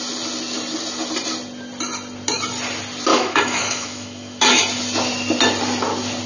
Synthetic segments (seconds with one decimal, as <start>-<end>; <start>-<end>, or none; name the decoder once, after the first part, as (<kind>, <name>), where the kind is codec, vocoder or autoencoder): 3.1-4.6 (autoencoder, DAC-VAE)